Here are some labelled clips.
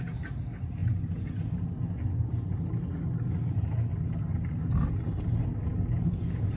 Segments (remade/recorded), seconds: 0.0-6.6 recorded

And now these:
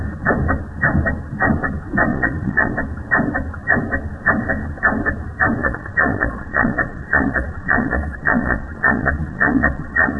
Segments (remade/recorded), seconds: 0.0-2.1 recorded; 2.1-2.7 remade; 2.7-5.6 recorded; 5.6-10.2 remade

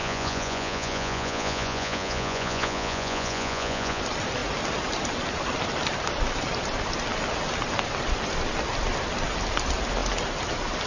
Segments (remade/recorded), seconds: 0.0-4.0 remade; 4.0-10.9 recorded

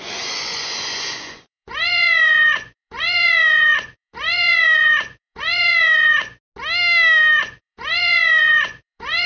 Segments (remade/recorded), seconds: 0.0-6.2 remade; 6.2-7.4 recorded; 7.4-9.3 remade

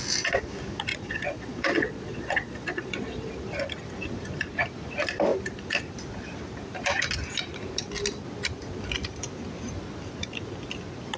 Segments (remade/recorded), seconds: 0.0-0.9 recorded; 0.9-3.3 remade; 3.3-11.2 recorded

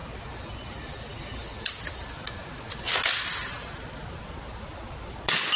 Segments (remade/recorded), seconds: 0.0-5.6 recorded

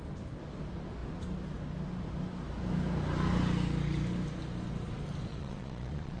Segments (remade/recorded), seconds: 0.0-5.3 recorded; 5.3-6.2 remade